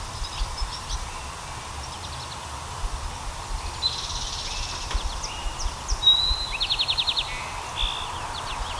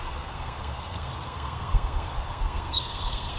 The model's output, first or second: second